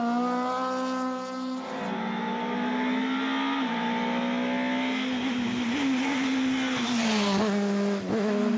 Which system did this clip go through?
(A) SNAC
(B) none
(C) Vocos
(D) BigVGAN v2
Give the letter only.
B